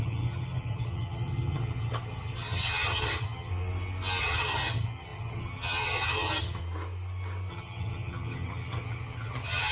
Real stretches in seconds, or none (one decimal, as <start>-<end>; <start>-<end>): 3.5-4.2; 6.6-7.5